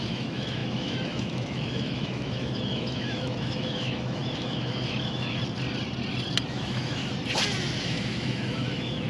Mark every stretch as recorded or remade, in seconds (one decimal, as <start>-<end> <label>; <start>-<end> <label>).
0.0-5.4 remade; 5.4-6.5 recorded; 6.5-7.0 remade; 7.0-7.8 recorded; 7.8-9.1 remade